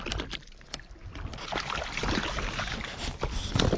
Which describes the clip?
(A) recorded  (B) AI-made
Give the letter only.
A